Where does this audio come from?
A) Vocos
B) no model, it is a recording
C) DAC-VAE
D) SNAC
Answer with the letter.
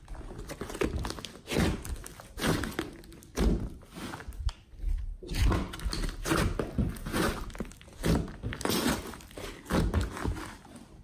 B